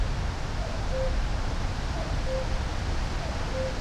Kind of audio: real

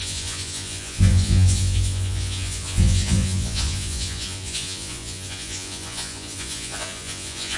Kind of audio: fake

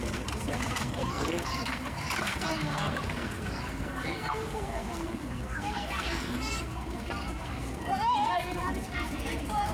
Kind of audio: fake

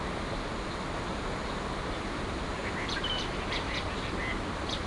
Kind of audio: real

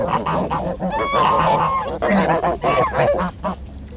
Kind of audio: real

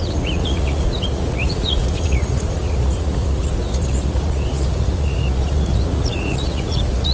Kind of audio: fake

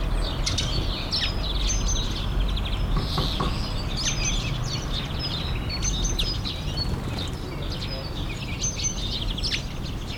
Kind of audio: real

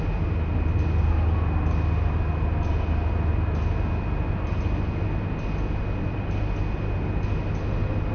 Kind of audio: real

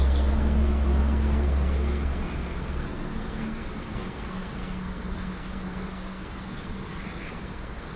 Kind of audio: fake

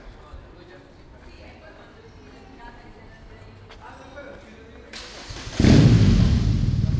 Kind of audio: real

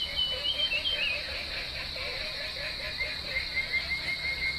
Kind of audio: real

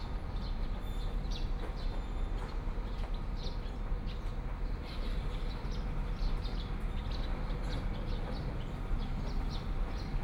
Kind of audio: real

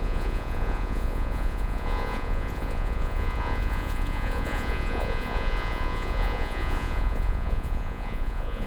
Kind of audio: fake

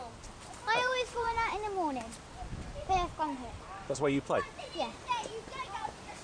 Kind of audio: real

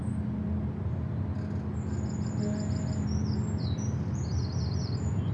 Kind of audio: real